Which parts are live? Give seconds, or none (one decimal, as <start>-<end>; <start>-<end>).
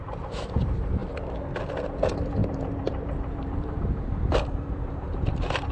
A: 1.0-2.0